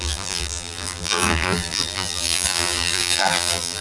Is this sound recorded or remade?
remade